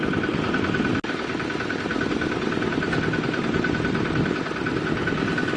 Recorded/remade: recorded